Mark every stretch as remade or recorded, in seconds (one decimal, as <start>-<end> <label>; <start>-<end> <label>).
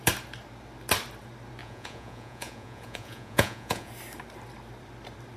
0.0-1.6 recorded; 1.6-3.9 remade; 3.9-5.4 recorded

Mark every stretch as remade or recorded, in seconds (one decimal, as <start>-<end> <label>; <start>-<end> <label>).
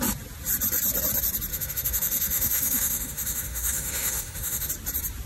0.0-1.5 recorded; 1.5-4.7 remade; 4.7-5.3 recorded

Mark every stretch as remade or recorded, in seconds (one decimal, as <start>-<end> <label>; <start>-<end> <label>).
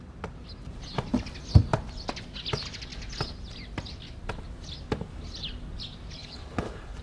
0.0-6.2 recorded; 6.2-7.0 remade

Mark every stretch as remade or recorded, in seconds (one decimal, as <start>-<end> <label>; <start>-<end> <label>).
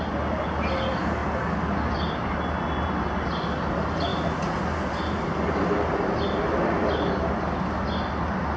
0.0-8.6 recorded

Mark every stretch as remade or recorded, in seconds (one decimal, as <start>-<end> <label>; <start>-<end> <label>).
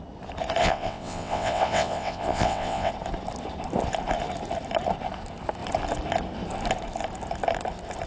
0.0-0.6 recorded; 0.6-2.9 remade; 2.9-8.1 recorded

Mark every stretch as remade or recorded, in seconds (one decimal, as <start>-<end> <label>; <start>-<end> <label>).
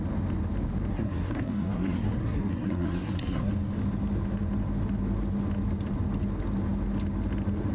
0.0-0.9 recorded; 0.9-3.5 remade; 3.5-7.7 recorded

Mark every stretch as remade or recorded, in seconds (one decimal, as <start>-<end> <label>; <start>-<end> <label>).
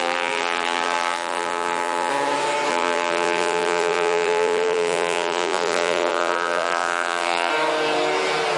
0.0-2.1 remade; 2.1-2.7 recorded; 2.7-7.5 remade; 7.5-8.6 recorded